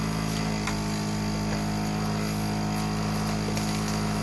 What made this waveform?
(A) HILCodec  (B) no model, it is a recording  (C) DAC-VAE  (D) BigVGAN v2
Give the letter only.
B